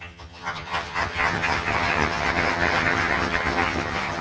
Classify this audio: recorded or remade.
remade